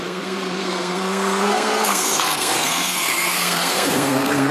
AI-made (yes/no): yes